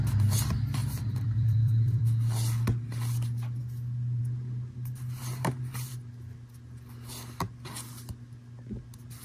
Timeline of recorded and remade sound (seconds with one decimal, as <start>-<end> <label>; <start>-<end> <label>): 0.0-0.8 recorded; 0.8-2.0 remade; 2.0-9.2 recorded

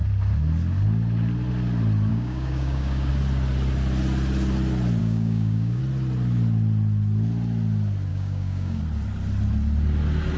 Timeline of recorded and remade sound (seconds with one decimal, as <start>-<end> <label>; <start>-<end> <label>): 0.0-2.1 recorded; 2.1-3.1 remade; 3.1-5.0 recorded; 5.0-5.8 remade; 5.8-8.1 recorded; 8.1-8.8 remade; 8.8-10.4 recorded

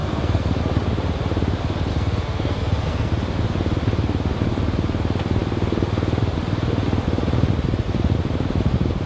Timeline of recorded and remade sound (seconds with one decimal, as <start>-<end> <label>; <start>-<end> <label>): 0.0-0.6 remade; 0.6-1.9 recorded; 1.9-3.1 remade; 3.1-9.1 recorded

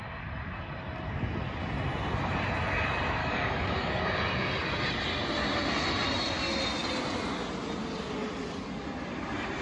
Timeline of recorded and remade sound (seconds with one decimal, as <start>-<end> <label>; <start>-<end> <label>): 0.0-3.2 recorded; 3.2-4.0 remade; 4.0-9.6 recorded

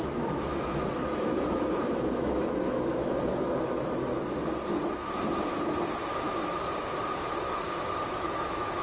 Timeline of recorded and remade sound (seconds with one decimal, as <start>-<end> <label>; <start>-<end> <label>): 0.0-4.1 remade; 4.1-7.3 recorded; 7.3-8.8 remade

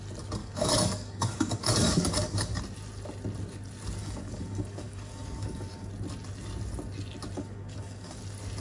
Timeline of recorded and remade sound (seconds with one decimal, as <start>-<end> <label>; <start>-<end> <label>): 0.0-0.4 recorded; 0.4-2.6 remade; 2.6-4.0 recorded; 4.0-5.9 remade; 5.9-7.4 recorded; 7.4-8.2 remade; 8.2-8.6 recorded

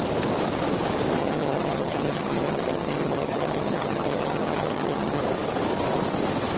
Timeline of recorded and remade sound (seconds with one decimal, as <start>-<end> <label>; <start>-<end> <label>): 0.0-1.2 recorded; 1.2-5.2 remade; 5.2-6.6 recorded

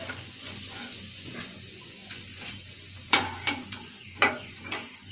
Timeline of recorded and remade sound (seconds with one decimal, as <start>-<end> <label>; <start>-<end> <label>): 0.0-5.1 remade